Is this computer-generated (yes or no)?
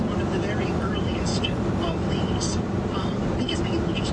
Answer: no